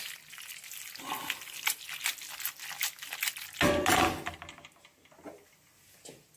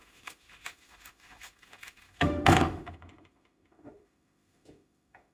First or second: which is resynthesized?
second